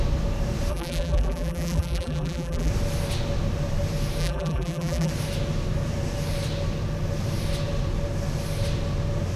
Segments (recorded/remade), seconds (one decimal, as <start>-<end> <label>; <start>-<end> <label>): 0.0-0.7 recorded; 0.7-2.7 remade; 2.7-4.2 recorded; 4.2-5.1 remade; 5.1-9.4 recorded